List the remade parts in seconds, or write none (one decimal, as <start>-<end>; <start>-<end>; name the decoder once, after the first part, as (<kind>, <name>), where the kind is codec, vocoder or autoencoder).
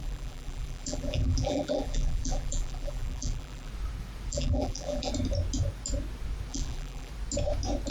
0.0-3.7 (vocoder, BigVGAN v2); 4.3-5.1; 6.5-7.1